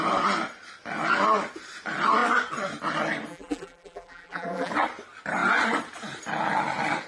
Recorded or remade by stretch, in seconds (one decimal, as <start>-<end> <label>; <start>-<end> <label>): 0.0-3.3 recorded; 3.3-4.7 remade; 4.7-7.1 recorded